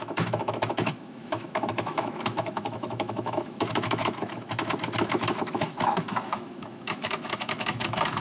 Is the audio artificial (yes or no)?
yes